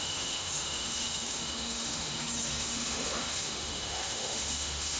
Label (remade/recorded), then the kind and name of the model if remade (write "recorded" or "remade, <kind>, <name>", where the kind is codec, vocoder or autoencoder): remade, autoencoder, DAC-VAE